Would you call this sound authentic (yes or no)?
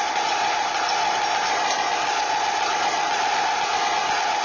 yes